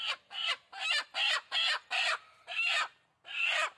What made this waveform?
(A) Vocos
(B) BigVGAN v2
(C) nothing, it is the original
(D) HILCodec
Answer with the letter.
C